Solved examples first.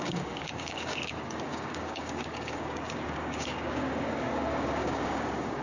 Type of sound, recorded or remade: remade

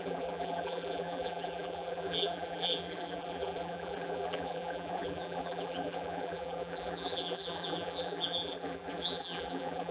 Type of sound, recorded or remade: remade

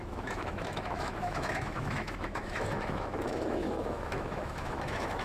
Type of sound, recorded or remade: remade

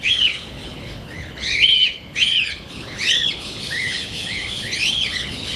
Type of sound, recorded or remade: remade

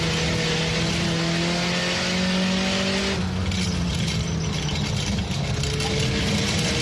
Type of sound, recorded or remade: recorded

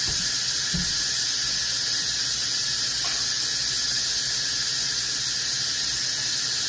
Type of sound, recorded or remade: recorded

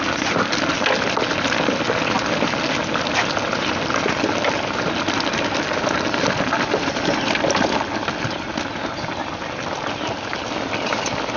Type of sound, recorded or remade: recorded